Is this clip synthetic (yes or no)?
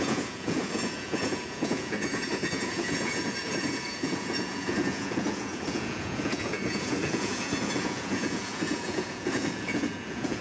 yes